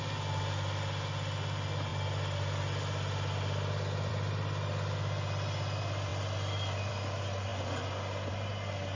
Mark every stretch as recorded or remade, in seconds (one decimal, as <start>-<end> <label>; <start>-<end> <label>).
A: 0.0-9.0 recorded